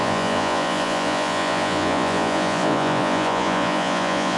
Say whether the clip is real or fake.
fake